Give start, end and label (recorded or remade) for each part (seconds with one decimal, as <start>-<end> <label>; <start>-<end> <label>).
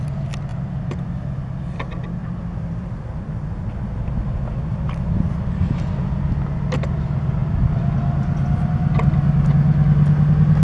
0.0-2.2 recorded; 2.2-3.3 remade; 3.3-7.4 recorded; 7.4-7.9 remade; 7.9-10.6 recorded